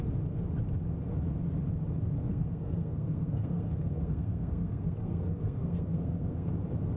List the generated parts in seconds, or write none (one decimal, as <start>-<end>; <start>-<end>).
2.3-6.5